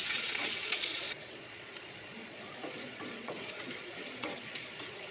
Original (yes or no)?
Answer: no